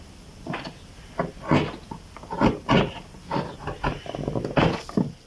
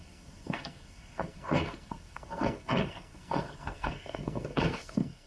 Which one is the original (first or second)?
first